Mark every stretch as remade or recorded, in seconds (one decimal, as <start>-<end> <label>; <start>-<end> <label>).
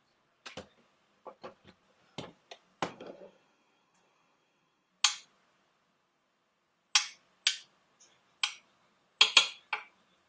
0.0-2.9 recorded; 2.9-4.9 remade; 4.9-10.3 recorded